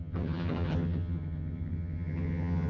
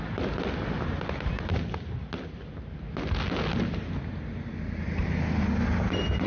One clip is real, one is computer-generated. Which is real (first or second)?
second